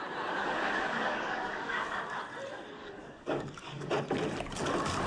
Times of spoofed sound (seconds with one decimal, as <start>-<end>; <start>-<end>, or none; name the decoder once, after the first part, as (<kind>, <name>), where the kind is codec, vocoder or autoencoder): 0.4-2.0 (codec, DAC); 2.8-3.9

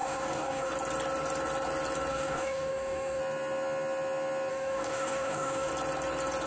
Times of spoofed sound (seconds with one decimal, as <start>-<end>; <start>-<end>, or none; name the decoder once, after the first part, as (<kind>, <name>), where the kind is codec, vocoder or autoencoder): 0.0-0.7 (codec, DAC); 2.1-3.2; 4.5-5.7

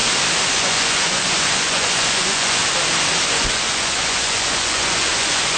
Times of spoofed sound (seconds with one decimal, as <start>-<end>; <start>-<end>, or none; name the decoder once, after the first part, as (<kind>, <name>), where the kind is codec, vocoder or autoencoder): 0.5-2.6 (vocoder, Vocos); 3.3-5.6

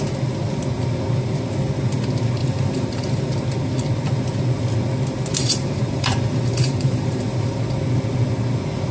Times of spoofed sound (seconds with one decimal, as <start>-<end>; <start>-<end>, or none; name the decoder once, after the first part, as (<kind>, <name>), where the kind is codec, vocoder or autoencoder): 2.4-3.3 (vocoder, BigVGAN v2); 5.3-7.6

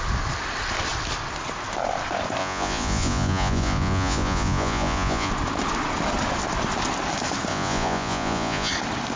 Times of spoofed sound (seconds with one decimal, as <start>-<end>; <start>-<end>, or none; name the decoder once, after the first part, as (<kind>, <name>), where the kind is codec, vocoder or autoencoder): 2.4-5.3 (vocoder, Vocos); 7.5-8.7